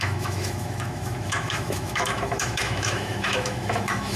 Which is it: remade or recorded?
remade